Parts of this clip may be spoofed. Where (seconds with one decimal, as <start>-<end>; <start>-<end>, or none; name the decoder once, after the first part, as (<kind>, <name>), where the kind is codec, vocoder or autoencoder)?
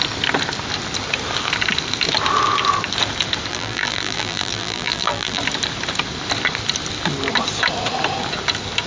3.5-5.4 (vocoder, BigVGAN v2)